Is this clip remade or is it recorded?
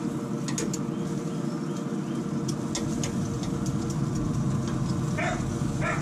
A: recorded